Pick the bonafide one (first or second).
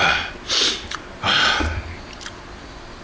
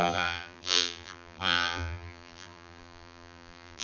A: first